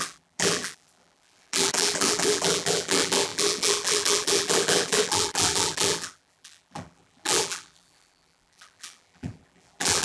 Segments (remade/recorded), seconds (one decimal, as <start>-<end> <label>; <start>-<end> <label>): 0.0-10.0 remade